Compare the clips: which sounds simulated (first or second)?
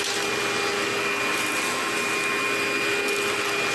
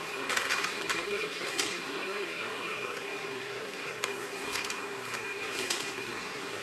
second